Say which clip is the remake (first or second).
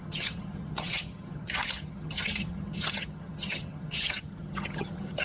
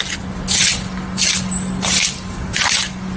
first